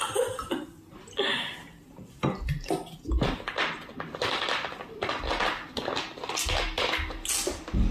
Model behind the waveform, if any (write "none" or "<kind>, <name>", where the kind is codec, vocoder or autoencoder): none